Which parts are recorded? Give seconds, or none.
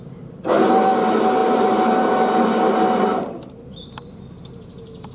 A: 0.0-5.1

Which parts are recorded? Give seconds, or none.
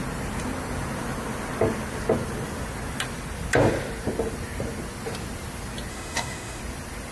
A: 0.0-5.9; 6.6-7.1